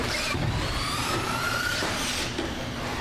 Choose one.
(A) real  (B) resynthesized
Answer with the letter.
B